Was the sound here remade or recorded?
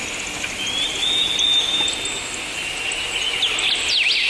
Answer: recorded